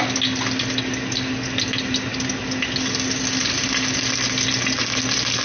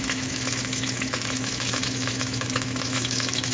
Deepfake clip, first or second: second